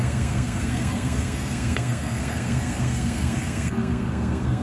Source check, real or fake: fake